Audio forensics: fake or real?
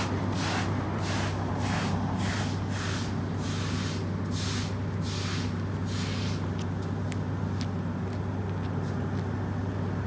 real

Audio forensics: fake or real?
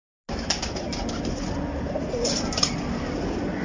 real